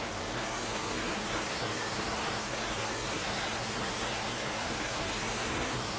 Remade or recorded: remade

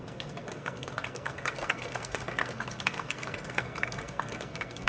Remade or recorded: remade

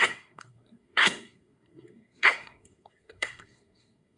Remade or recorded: remade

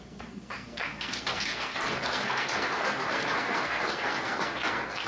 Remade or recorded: remade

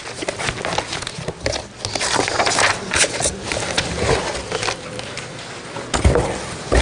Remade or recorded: recorded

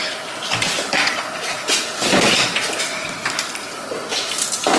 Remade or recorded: recorded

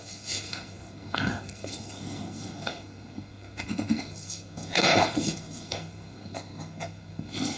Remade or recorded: remade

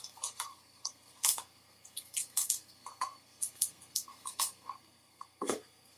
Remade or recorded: remade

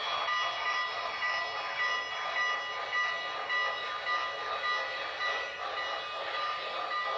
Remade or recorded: recorded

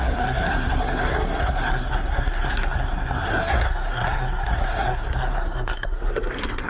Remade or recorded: remade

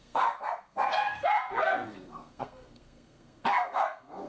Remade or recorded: remade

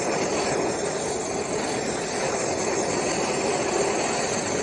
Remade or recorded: recorded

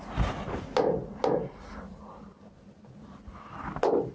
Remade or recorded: recorded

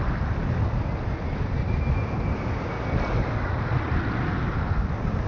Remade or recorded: recorded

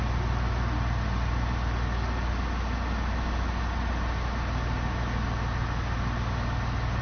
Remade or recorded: recorded